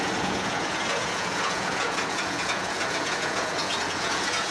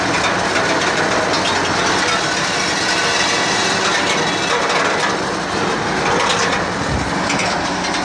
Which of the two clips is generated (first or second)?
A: first